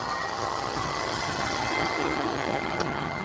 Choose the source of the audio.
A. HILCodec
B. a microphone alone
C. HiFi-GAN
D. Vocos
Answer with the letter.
C